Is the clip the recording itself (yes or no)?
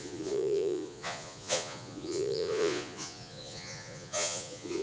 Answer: no